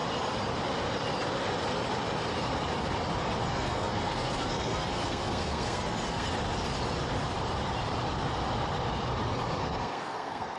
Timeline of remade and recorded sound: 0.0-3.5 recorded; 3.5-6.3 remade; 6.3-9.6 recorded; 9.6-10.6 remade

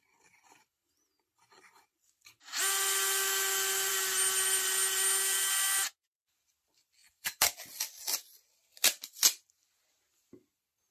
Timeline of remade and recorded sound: 0.0-10.9 recorded

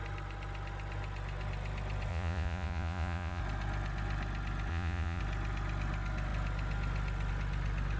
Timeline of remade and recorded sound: 0.0-2.1 recorded; 2.1-3.4 remade; 3.4-4.7 recorded; 4.7-5.2 remade; 5.2-8.0 recorded